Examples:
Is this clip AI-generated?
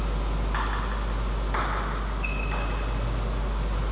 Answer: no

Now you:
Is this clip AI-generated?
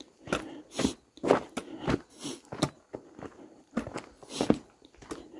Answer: no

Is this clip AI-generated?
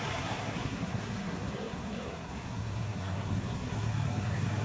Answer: yes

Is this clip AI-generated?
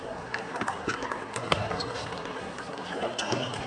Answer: yes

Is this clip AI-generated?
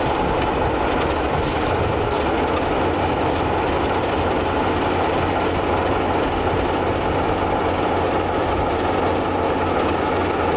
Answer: no